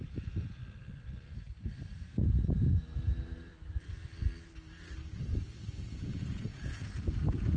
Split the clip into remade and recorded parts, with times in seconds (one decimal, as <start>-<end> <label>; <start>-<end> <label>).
0.0-0.6 remade; 0.6-1.9 recorded; 1.9-3.5 remade; 3.5-5.8 recorded; 5.8-7.6 remade